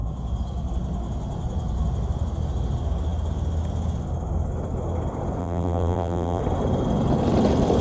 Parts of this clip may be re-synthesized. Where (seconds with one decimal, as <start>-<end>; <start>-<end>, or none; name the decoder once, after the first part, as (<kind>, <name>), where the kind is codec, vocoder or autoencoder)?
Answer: 5.4-6.4 (vocoder, BigVGAN v2)